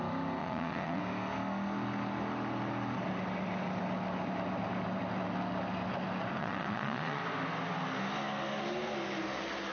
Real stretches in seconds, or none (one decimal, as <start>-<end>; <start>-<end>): 0.0-0.4; 1.0-6.4; 7.2-9.7